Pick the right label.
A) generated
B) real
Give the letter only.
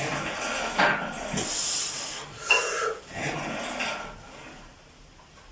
B